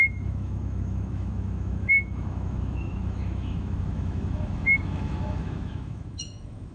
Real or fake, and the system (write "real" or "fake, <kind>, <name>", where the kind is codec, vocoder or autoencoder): fake, autoencoder, DAC-VAE